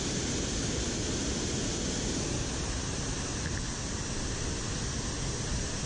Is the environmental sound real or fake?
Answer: real